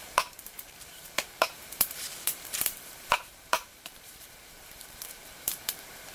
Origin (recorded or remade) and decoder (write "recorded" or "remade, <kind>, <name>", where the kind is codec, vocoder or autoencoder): remade, vocoder, BigVGAN v2